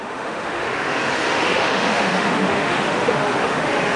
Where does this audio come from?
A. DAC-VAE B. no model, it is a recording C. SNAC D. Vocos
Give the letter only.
A